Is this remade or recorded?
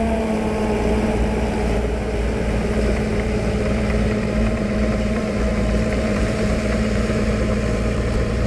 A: remade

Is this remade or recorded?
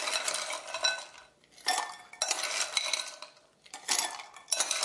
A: recorded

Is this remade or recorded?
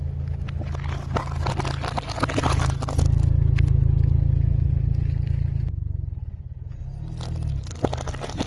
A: recorded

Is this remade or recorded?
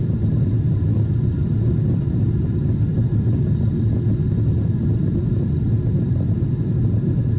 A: remade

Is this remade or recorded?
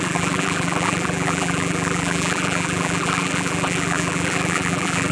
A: remade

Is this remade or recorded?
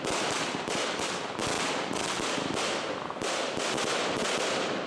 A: recorded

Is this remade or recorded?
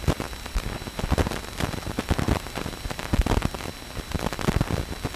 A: remade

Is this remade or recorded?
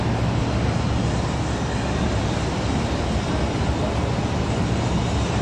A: recorded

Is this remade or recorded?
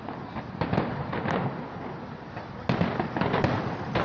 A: recorded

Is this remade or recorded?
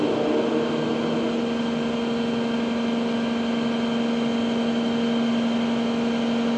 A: recorded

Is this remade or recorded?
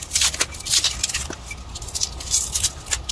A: recorded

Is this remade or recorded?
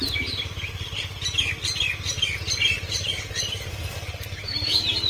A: recorded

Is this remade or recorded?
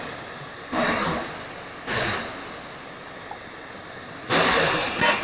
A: recorded